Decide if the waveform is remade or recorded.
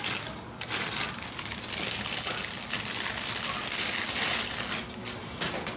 recorded